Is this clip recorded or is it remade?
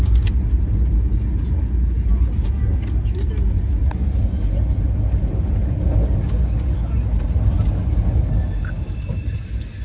recorded